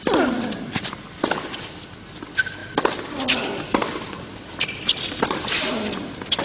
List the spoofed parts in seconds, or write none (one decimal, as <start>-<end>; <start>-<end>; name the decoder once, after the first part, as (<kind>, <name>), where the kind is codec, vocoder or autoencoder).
none

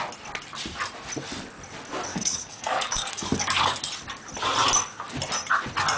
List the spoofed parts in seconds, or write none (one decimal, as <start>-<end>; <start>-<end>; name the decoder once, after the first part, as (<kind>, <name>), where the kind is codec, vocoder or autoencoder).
2.1-3.8 (codec, DAC)